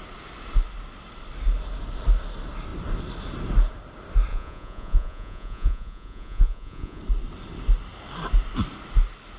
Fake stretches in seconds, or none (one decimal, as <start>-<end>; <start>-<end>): 4.3-7.0